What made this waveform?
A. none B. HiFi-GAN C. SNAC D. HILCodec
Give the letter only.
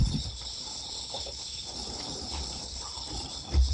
D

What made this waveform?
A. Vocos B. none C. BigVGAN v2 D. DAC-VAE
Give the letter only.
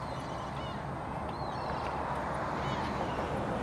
B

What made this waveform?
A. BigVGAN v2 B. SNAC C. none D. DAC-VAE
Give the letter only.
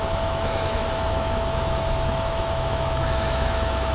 D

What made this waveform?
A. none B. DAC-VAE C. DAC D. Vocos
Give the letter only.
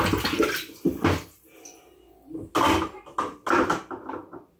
A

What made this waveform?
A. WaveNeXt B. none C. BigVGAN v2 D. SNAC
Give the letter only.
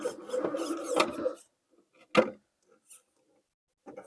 B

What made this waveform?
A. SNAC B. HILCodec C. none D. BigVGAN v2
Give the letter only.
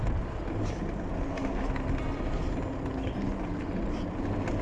C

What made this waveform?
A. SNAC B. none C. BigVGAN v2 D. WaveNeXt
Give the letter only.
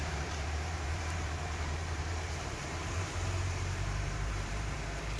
C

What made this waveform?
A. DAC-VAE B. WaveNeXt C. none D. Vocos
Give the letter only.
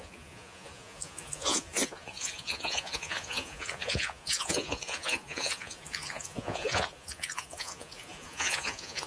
D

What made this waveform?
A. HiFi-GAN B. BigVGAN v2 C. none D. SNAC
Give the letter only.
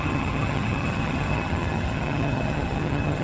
A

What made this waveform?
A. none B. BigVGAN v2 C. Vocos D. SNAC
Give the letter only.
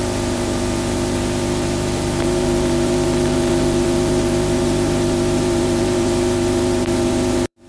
B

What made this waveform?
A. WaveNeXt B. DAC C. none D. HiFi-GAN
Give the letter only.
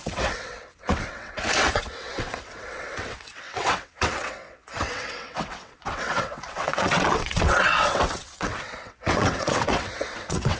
A